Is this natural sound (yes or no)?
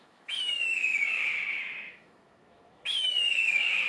no